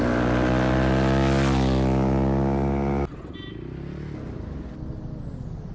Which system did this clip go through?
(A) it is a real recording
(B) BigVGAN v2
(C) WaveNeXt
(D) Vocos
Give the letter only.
A